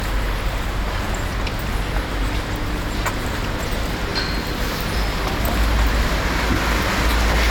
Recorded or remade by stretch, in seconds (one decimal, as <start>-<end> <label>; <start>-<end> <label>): 0.0-7.5 recorded